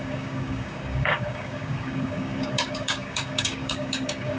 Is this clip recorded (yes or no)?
no